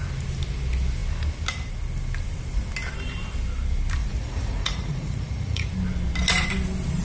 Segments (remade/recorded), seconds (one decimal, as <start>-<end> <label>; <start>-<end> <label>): 0.0-4.0 recorded; 4.0-5.7 remade; 5.7-7.0 recorded